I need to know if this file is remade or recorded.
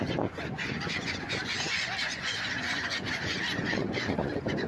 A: remade